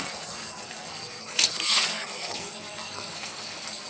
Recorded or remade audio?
remade